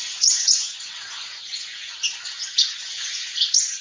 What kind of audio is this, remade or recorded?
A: remade